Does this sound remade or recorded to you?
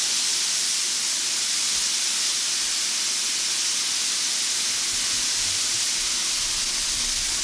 recorded